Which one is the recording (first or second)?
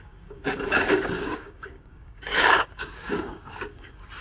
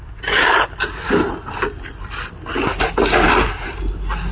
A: second